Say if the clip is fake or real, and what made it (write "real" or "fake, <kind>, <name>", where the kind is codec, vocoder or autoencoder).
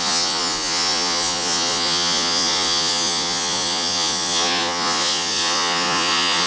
fake, vocoder, Vocos